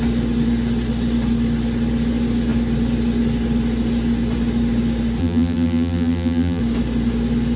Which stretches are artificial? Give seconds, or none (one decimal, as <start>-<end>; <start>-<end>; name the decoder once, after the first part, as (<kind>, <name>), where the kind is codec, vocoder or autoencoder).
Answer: 5.2-6.6 (vocoder, BigVGAN v2)